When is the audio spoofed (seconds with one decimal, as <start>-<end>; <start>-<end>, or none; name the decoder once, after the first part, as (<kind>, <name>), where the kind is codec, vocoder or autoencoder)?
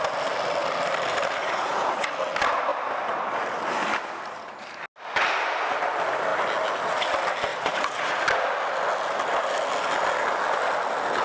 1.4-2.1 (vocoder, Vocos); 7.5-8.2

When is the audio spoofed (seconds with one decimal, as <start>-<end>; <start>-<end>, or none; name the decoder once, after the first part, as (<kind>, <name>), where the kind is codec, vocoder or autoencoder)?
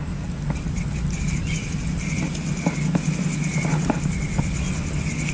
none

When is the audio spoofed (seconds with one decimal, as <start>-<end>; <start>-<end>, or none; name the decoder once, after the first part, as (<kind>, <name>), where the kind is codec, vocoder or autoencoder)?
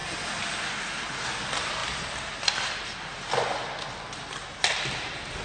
none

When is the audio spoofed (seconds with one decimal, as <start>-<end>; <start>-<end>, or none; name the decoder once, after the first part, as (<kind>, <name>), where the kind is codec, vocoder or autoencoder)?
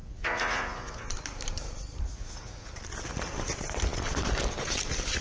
0.0-1.1 (vocoder, Vocos); 2.1-2.7